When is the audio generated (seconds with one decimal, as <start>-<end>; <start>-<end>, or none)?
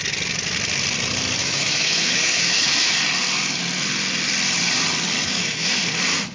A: 1.4-3.0; 5.2-5.7